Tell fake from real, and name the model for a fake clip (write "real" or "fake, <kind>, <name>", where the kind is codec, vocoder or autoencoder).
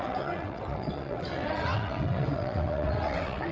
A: fake, vocoder, WaveNeXt